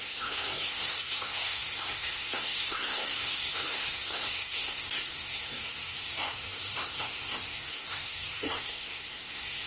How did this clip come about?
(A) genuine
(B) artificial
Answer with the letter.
B